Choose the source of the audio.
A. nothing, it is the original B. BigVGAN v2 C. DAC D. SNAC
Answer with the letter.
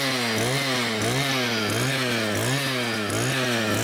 A